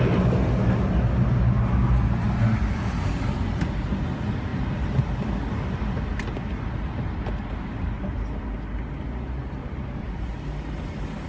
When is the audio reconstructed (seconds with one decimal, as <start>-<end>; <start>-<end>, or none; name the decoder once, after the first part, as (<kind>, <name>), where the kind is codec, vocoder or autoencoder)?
9.6-10.2 (vocoder, BigVGAN v2)